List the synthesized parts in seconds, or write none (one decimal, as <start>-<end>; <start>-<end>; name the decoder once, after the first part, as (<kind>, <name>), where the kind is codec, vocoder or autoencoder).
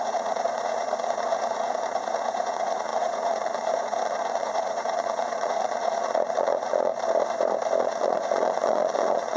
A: 0.0-6.9 (vocoder, Vocos); 7.8-9.4